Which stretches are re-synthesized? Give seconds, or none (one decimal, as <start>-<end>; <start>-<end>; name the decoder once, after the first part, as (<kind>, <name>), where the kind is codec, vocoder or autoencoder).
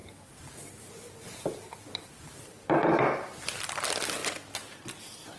0.0-3.0 (vocoder, BigVGAN v2); 4.2-4.8